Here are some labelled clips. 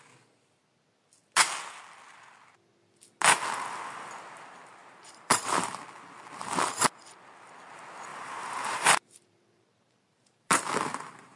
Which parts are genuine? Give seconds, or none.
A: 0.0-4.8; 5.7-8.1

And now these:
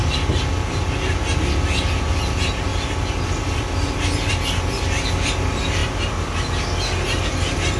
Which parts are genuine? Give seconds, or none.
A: 0.0-2.7; 4.3-7.8

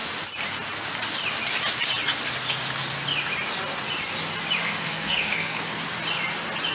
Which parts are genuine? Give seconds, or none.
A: 0.0-4.6; 5.8-6.7

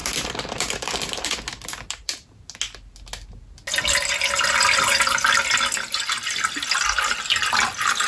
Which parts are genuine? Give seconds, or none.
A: 2.3-8.1